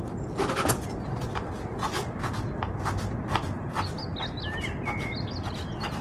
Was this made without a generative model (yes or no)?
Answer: yes